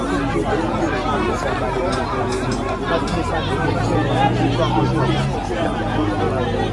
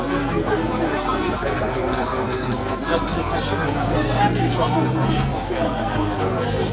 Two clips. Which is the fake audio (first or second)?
second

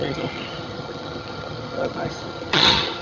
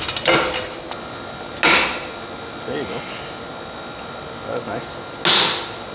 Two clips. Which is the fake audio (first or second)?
first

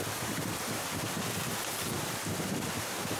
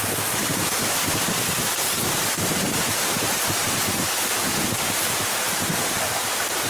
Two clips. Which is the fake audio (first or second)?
second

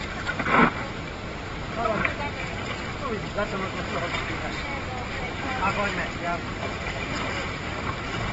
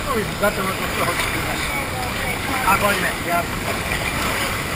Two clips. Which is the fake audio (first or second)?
second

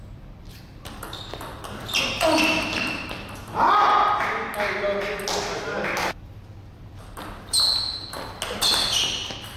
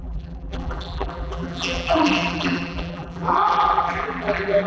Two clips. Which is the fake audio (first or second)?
second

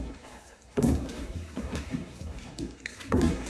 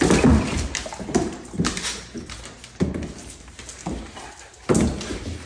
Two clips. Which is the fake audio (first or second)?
first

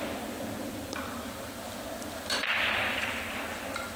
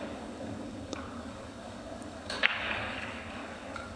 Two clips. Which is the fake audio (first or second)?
second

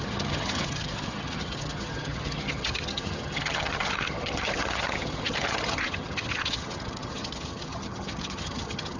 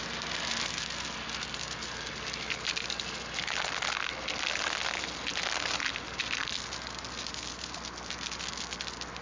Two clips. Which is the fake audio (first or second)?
first